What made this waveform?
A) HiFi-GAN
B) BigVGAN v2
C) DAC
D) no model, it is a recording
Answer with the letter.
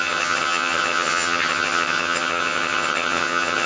A